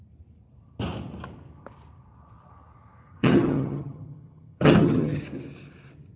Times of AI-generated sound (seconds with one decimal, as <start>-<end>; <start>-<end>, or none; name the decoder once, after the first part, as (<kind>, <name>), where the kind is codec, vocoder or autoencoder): 3.1-5.2 (vocoder, HiFi-GAN)